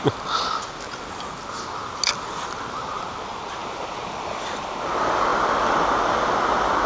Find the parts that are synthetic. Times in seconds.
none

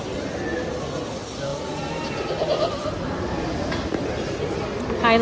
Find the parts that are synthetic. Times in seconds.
none

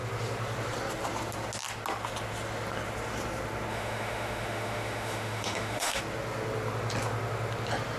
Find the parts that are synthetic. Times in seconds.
3.7-6.0 (autoencoder, DAC-VAE)

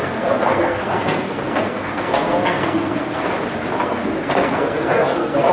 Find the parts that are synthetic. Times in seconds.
0.0-3.3 (codec, SNAC); 3.8-5.5

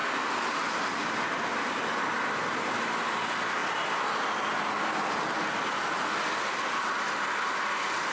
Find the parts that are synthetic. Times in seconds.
none

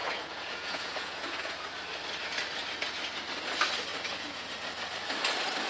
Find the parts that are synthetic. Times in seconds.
0.0-1.7 (vocoder, Vocos); 3.9-4.5

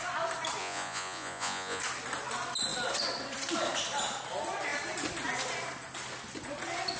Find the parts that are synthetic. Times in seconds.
0.6-1.8 (vocoder, Vocos)